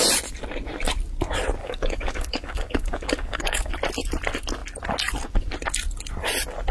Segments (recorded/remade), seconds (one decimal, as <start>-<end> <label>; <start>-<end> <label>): 0.0-1.6 recorded; 1.6-3.7 remade; 3.7-6.7 recorded